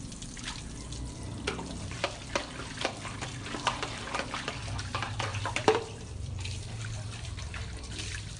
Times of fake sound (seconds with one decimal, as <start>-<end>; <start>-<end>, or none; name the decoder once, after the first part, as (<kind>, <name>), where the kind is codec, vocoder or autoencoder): 5.3-8.4 (vocoder, BigVGAN v2)